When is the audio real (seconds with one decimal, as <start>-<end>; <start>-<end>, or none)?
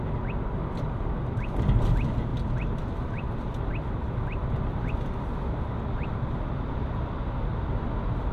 0.0-8.3